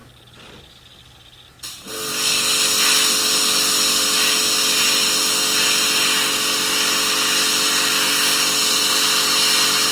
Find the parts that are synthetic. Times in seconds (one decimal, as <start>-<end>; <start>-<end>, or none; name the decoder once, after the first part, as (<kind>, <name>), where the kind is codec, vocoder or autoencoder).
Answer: none